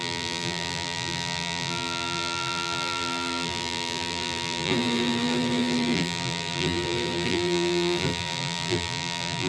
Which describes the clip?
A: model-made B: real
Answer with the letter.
A